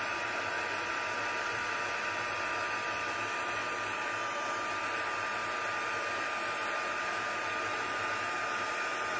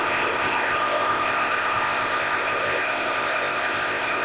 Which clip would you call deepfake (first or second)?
second